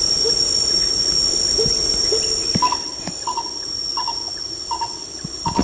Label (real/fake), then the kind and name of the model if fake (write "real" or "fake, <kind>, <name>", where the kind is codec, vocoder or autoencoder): real